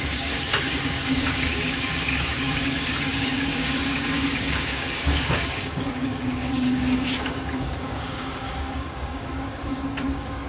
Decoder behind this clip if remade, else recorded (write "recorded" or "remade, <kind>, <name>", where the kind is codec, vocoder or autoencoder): remade, codec, DAC